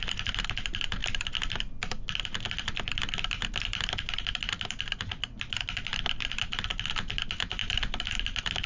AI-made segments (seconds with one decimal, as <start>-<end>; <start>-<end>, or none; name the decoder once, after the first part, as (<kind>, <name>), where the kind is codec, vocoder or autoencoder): none

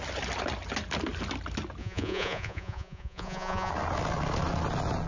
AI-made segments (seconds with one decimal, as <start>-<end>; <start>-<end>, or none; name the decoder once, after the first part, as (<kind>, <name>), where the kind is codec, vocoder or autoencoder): 1.8-3.7 (vocoder, Vocos)

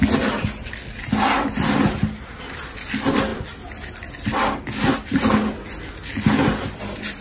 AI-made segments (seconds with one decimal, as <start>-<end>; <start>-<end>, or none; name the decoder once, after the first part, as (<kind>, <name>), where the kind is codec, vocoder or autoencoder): none

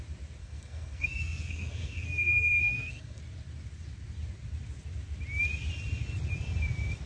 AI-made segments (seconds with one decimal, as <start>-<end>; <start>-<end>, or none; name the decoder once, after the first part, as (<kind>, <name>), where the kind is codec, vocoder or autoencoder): 0.4-3.2 (codec, SNAC)